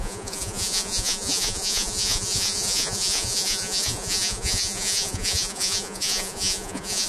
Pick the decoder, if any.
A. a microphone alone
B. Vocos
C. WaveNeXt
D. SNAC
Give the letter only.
B